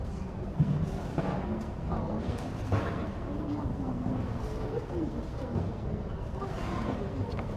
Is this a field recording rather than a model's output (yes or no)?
no